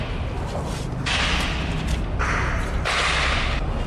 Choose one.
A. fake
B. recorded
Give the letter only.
B